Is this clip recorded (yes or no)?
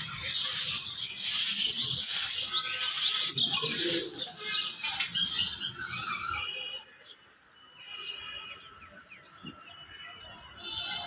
yes